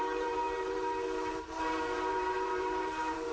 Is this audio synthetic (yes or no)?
yes